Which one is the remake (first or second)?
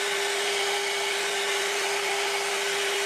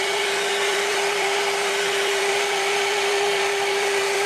second